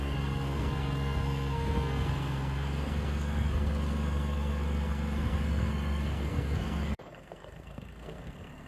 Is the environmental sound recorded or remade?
remade